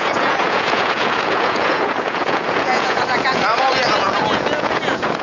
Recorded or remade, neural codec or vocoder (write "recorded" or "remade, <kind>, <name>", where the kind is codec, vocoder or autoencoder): remade, vocoder, Vocos